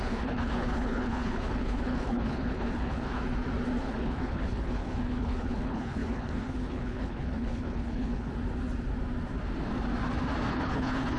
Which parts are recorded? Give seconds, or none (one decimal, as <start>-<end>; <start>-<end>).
3.2-3.8; 8.3-10.5